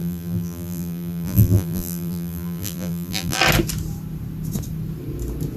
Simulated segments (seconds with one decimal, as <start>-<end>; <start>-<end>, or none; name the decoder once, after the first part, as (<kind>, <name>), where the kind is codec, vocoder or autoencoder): 0.0-3.4 (vocoder, BigVGAN v2)